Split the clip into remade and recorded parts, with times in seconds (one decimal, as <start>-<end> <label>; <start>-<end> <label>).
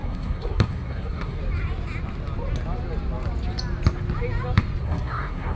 0.0-1.4 remade; 1.4-4.8 recorded; 4.8-5.6 remade